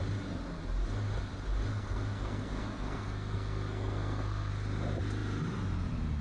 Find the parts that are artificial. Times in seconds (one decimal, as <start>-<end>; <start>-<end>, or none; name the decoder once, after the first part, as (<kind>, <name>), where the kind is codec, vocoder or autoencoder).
1.7-4.5 (codec, SNAC)